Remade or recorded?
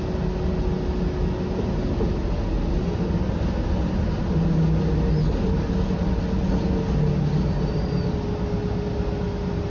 recorded